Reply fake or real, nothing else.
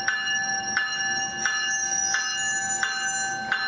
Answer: real